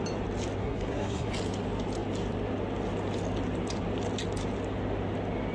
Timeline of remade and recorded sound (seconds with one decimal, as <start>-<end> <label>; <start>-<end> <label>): 0.0-0.6 recorded; 0.6-1.3 remade; 1.3-5.5 recorded